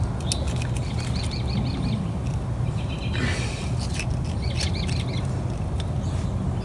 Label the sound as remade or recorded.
recorded